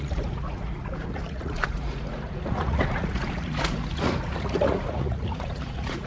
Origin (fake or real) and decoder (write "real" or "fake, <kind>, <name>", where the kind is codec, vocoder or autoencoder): fake, vocoder, Vocos